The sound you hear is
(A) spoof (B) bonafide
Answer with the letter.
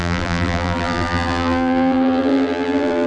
A